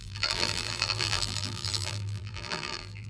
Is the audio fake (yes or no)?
yes